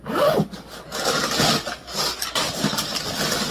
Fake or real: real